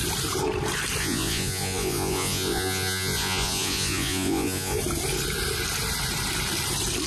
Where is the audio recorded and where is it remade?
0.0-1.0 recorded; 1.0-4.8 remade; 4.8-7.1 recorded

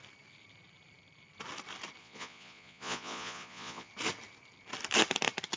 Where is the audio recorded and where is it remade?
0.0-2.0 recorded; 2.0-3.9 remade; 3.9-5.6 recorded

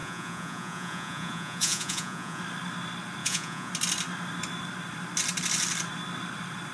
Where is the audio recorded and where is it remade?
0.0-2.4 remade; 2.4-3.2 recorded; 3.2-3.7 remade; 3.7-6.7 recorded

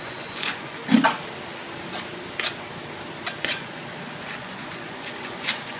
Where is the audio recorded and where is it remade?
0.0-0.8 remade; 0.8-3.4 recorded; 3.4-3.8 remade; 3.8-4.4 recorded; 4.4-5.8 remade

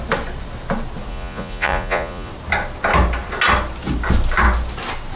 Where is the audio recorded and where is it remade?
0.0-1.1 recorded; 1.1-2.3 remade; 2.3-5.2 recorded